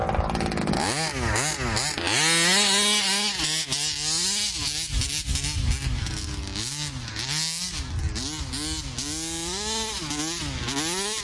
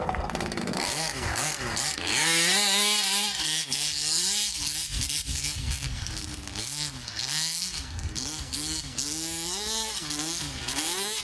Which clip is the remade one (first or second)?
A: second